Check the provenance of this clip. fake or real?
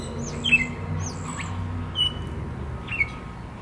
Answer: real